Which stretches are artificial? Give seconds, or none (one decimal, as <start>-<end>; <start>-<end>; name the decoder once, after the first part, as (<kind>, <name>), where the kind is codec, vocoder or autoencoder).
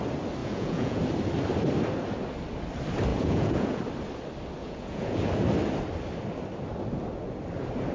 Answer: 0.4-1.0 (vocoder, Vocos); 3.1-3.8; 4.6-5.2